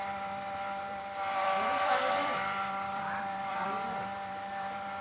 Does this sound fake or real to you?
fake